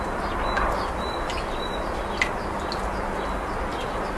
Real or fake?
real